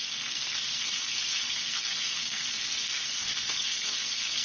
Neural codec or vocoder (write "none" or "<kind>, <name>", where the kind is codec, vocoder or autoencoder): codec, SNAC